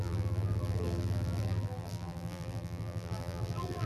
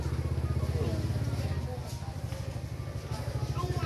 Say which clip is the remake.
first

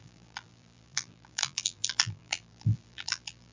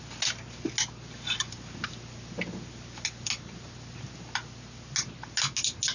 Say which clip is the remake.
first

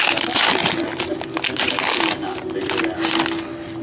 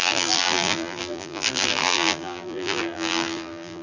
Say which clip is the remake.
second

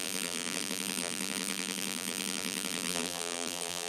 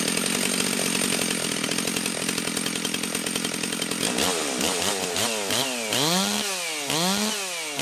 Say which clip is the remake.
first